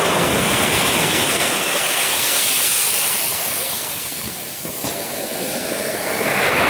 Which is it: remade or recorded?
remade